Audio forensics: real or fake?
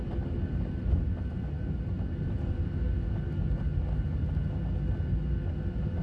real